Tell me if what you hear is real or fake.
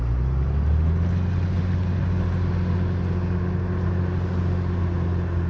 real